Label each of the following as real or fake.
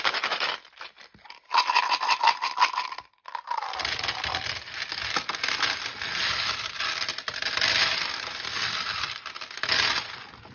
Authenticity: real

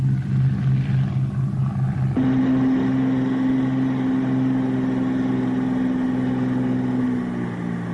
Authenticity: real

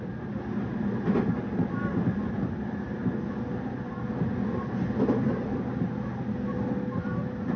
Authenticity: real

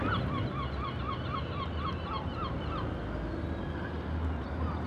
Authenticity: real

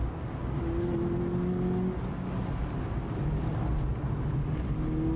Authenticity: real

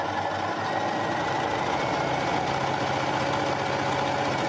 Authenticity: real